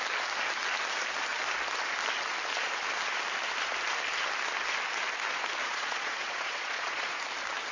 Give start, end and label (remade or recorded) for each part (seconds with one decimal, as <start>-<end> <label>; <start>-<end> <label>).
0.0-5.6 recorded; 5.6-7.2 remade; 7.2-7.7 recorded